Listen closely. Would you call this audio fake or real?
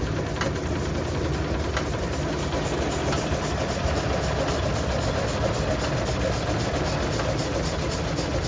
real